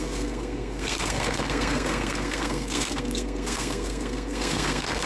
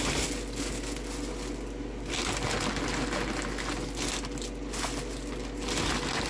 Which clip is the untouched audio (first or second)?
second